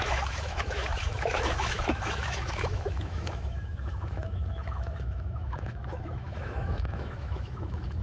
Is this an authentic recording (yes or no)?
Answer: no